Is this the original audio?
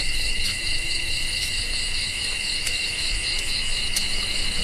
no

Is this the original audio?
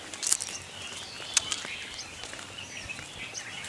yes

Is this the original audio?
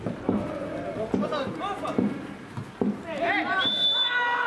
yes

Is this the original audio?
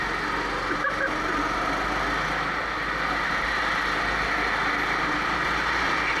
yes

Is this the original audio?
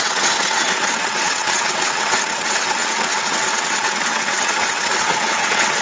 no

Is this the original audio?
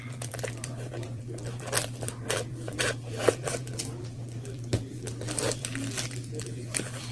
no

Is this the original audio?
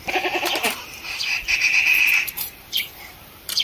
no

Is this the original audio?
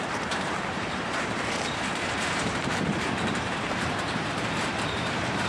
no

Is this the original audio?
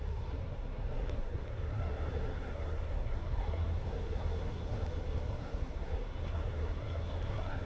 no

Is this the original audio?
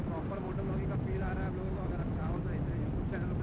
yes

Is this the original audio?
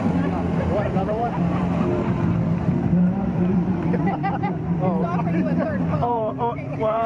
no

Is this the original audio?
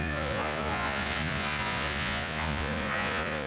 no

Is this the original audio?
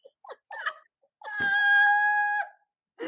yes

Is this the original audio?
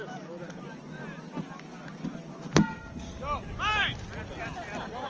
yes